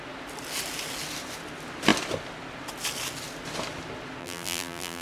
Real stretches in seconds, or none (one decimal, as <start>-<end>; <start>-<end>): 0.0-4.2